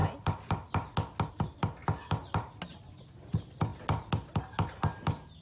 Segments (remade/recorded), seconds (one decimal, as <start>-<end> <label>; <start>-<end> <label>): 0.0-5.4 recorded